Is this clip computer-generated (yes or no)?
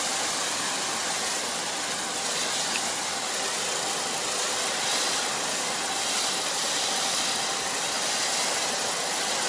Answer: no